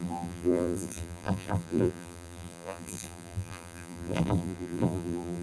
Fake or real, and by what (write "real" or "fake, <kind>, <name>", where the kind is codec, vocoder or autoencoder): fake, vocoder, BigVGAN v2